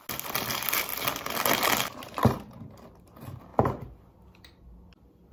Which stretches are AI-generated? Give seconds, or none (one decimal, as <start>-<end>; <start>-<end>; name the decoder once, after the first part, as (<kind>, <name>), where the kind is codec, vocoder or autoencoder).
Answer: none